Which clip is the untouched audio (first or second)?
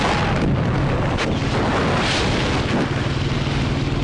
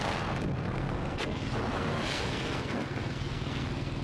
first